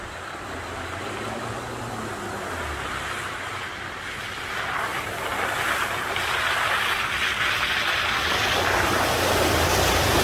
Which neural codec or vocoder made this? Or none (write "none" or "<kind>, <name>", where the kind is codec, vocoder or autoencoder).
none